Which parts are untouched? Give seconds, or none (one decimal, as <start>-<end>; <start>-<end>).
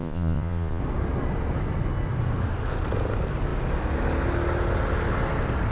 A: 0.8-5.7